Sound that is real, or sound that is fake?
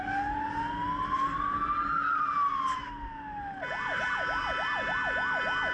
real